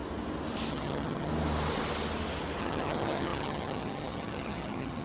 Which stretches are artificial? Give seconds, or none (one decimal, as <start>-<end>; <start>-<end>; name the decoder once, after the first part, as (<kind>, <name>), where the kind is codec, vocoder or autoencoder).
0.7-1.3 (vocoder, HiFi-GAN); 2.6-5.0